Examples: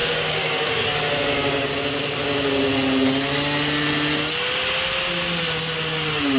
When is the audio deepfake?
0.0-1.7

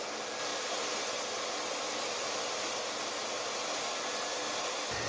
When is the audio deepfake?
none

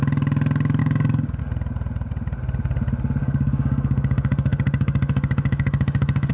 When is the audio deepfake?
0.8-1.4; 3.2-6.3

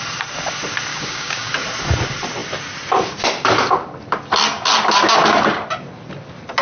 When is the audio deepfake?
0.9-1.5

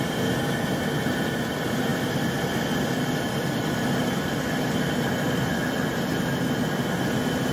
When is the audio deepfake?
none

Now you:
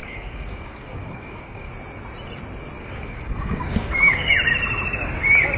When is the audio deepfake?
0.0-1.7; 2.8-4.3

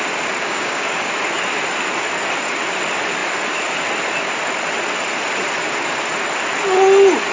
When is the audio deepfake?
0.4-1.1